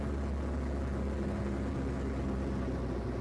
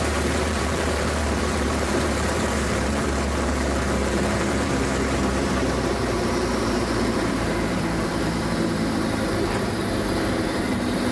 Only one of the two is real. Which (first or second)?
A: first